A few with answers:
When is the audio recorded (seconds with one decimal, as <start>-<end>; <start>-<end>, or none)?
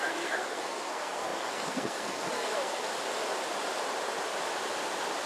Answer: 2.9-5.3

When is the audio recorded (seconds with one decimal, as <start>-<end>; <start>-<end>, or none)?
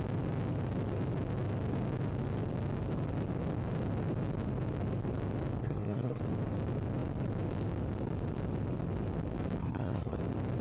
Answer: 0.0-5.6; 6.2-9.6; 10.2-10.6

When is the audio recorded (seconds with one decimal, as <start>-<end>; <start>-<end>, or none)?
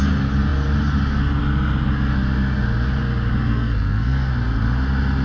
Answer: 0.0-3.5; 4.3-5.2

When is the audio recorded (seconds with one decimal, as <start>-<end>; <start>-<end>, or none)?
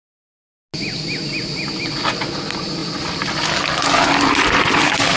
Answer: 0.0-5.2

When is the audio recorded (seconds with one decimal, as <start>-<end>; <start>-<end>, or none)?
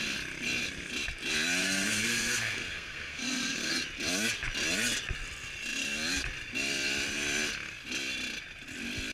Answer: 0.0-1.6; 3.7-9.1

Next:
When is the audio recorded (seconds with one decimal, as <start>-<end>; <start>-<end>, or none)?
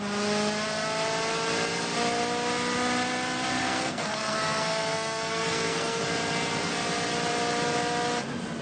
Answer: 0.0-3.6; 6.0-8.6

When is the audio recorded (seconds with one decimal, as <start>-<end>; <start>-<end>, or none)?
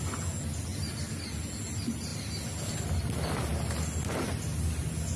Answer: 0.0-5.2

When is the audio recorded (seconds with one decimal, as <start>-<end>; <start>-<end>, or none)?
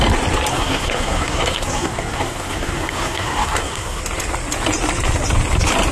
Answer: 0.0-0.5; 4.0-5.9